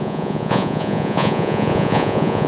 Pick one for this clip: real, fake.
fake